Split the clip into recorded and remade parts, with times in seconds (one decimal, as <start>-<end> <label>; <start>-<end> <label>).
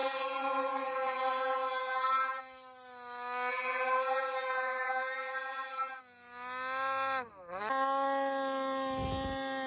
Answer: 0.0-2.4 remade; 2.4-3.5 recorded; 3.5-6.0 remade; 6.0-9.7 recorded